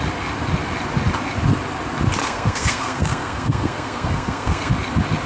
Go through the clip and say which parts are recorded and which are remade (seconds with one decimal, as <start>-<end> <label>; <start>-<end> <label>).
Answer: 0.0-2.2 recorded; 2.2-4.7 remade; 4.7-5.3 recorded